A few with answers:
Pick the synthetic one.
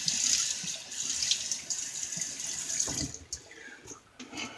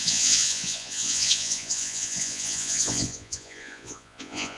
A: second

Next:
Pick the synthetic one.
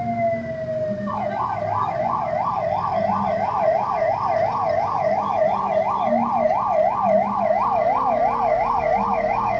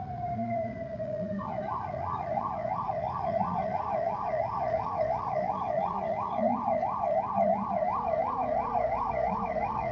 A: second